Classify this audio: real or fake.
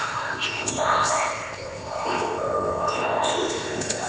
fake